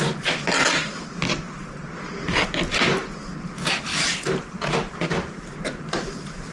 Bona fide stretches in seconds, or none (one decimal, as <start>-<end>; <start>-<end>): 0.0-6.5